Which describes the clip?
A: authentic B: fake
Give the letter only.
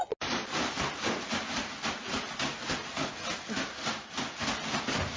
A